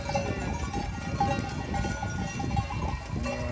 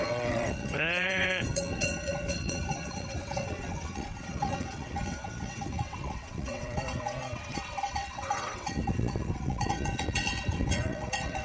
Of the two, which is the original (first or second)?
first